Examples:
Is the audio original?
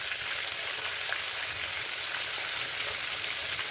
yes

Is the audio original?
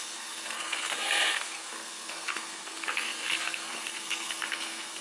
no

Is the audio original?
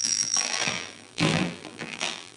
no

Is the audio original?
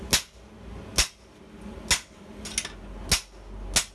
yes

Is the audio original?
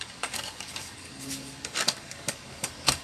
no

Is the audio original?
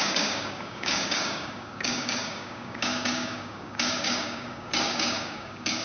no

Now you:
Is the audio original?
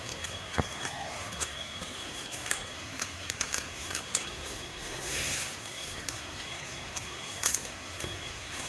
no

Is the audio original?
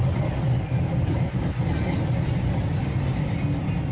yes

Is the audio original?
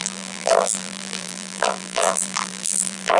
no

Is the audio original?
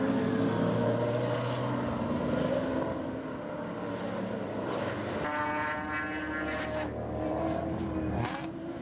yes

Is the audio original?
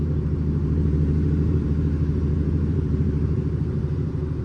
no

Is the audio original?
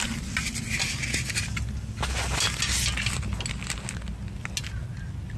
yes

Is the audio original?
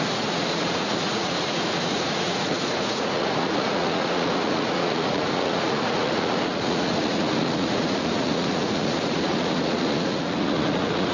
no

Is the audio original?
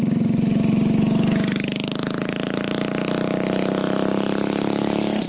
yes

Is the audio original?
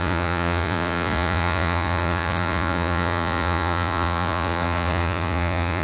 no